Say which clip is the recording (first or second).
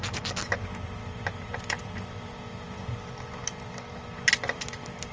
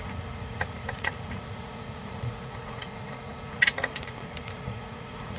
first